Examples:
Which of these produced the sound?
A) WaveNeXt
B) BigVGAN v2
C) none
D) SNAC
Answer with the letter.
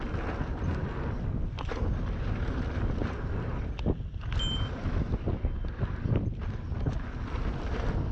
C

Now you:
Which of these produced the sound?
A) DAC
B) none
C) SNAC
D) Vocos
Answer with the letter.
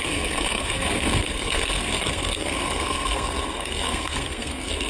C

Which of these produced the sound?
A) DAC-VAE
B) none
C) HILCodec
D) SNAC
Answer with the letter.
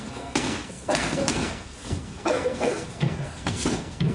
D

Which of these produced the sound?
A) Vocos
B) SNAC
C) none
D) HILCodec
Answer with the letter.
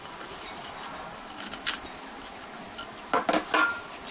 C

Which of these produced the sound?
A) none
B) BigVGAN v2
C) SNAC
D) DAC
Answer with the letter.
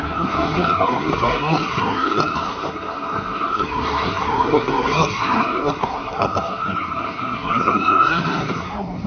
C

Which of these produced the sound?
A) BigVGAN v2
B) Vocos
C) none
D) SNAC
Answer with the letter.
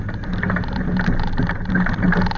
C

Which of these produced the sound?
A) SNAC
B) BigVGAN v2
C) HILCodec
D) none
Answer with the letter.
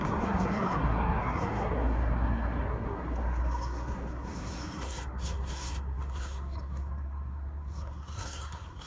A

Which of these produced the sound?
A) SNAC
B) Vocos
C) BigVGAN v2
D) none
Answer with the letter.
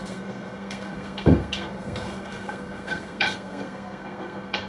A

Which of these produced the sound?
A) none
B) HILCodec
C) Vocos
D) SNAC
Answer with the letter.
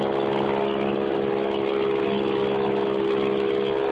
A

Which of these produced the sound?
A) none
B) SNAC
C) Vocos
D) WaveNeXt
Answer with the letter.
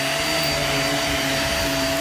A